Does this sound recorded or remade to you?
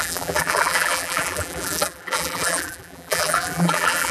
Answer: remade